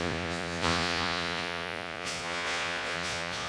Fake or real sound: fake